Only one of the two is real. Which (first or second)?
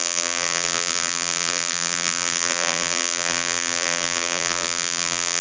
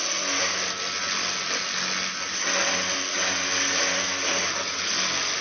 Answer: second